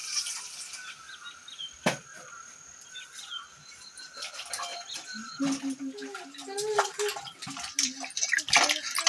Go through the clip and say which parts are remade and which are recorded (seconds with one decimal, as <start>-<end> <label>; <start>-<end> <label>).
0.0-9.1 recorded